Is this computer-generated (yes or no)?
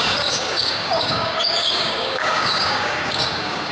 yes